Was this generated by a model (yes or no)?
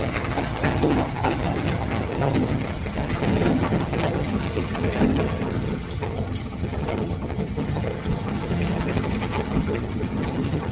yes